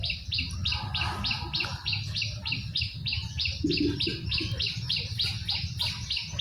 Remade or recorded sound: recorded